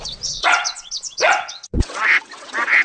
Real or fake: fake